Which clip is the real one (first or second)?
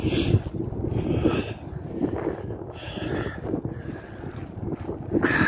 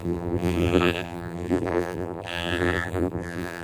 first